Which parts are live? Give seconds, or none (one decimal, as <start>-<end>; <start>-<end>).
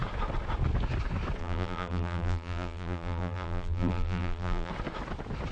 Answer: 0.0-1.4; 4.7-5.5